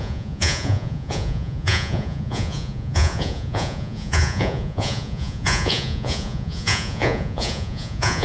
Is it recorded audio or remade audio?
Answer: remade